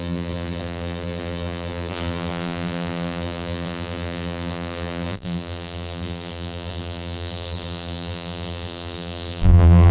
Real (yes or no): no